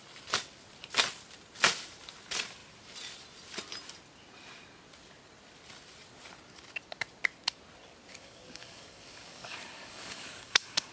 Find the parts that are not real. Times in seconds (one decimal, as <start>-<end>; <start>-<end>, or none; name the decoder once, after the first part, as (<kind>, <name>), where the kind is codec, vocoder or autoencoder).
8.1-10.9 (codec, DAC)